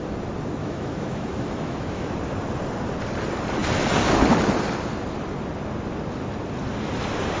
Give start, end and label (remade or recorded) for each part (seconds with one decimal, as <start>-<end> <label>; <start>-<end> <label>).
0.0-0.6 recorded; 0.6-2.1 remade; 2.1-7.4 recorded